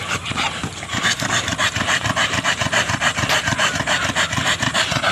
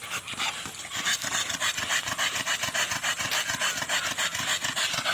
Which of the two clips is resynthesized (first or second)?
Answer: first